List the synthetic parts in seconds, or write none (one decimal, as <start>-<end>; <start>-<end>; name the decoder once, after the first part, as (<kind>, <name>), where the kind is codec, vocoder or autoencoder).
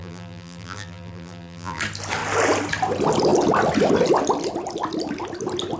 0.0-1.8 (vocoder, BigVGAN v2)